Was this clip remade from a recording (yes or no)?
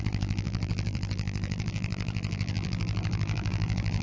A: yes